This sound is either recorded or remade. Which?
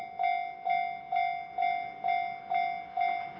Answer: recorded